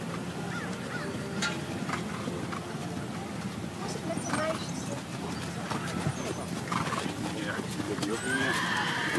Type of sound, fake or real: real